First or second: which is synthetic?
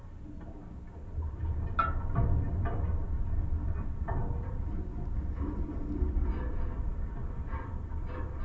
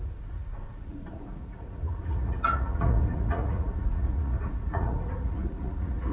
second